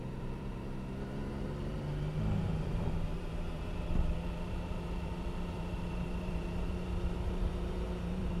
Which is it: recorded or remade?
remade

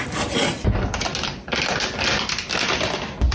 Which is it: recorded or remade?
recorded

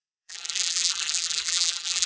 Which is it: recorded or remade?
remade